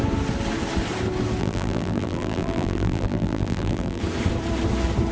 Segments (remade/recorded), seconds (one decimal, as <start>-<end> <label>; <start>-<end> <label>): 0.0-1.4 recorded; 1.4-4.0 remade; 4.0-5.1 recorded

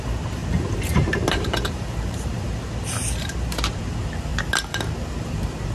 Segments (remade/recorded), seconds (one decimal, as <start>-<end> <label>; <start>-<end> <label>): 0.0-4.3 remade; 4.3-5.2 recorded; 5.2-5.7 remade

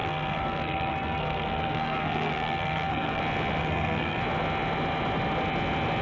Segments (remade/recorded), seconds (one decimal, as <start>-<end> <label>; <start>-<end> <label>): 0.0-3.2 remade; 3.2-3.6 recorded; 3.6-4.2 remade; 4.2-6.0 recorded

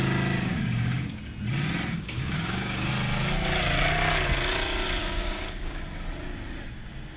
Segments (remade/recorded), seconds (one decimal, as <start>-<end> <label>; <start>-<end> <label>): 0.0-0.5 recorded; 0.5-1.1 remade; 1.1-1.9 recorded; 1.9-2.9 remade; 2.9-5.0 recorded; 5.0-5.8 remade; 5.8-7.2 recorded

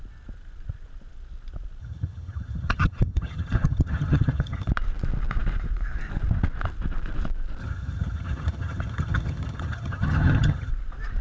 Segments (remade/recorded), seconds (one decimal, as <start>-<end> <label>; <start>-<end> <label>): 0.0-1.8 recorded; 1.8-4.7 remade; 4.7-7.6 recorded; 7.6-10.7 remade; 10.7-11.2 recorded

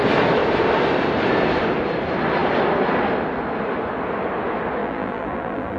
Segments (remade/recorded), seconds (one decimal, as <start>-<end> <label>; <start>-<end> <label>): 0.0-4.8 recorded; 4.8-5.8 remade

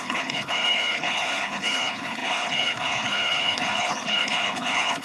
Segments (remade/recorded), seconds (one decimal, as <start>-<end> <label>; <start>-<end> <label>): 0.0-5.0 remade

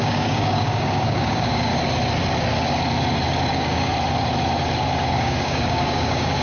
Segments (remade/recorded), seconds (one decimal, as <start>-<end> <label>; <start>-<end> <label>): 0.0-1.7 remade; 1.7-3.5 recorded; 3.5-3.9 remade; 3.9-5.1 recorded; 5.1-6.4 remade